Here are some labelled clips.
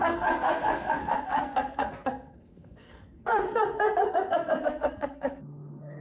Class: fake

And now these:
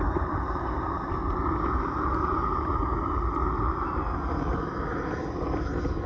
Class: real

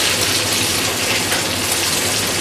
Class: fake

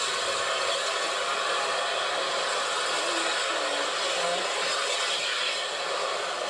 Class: real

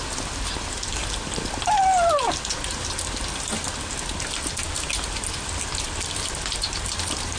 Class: real